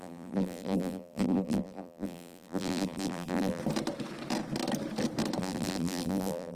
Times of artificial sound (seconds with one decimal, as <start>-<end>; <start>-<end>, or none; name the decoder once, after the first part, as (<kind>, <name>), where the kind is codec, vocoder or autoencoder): 0.0-3.6 (vocoder, BigVGAN v2); 5.4-6.6